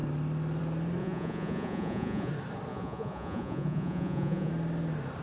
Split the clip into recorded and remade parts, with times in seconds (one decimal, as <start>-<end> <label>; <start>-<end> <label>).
0.0-1.0 recorded; 1.0-2.3 remade; 2.3-2.7 recorded; 2.7-4.5 remade; 4.5-5.2 recorded